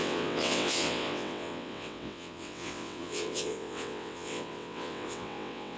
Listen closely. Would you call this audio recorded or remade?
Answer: remade